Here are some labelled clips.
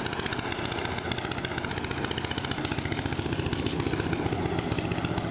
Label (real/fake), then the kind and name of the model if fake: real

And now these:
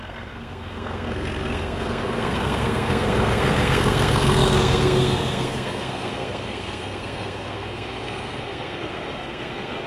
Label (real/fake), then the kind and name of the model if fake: fake, codec, SNAC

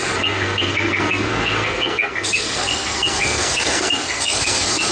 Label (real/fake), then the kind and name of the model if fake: fake, codec, SNAC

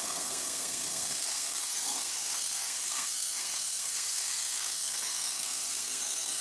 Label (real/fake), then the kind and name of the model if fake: fake, codec, SNAC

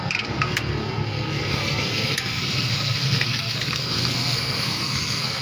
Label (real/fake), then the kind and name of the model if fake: fake, codec, SNAC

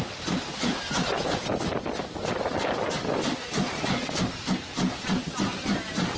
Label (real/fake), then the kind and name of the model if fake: real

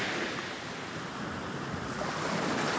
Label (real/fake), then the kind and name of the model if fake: real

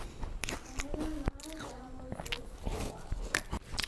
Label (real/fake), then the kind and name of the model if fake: real